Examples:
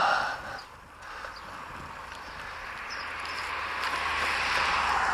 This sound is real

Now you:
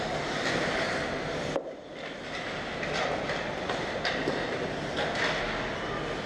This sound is real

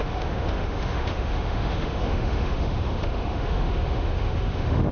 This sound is fake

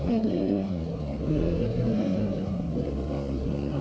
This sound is fake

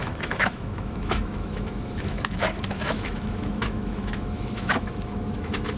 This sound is fake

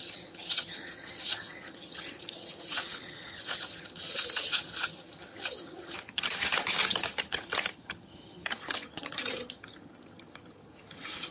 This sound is fake